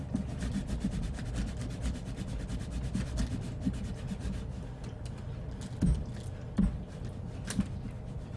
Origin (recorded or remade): recorded